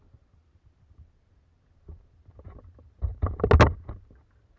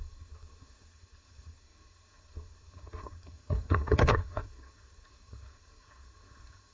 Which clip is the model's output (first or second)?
second